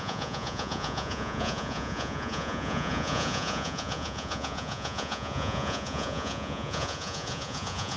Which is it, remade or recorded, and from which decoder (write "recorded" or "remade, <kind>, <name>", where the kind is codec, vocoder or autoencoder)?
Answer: remade, vocoder, Vocos